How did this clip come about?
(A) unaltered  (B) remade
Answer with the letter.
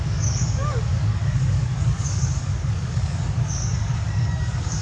B